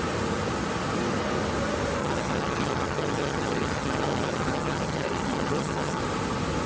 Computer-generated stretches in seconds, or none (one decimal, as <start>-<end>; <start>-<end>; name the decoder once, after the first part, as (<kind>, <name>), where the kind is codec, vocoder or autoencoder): 2.0-6.0 (vocoder, HiFi-GAN)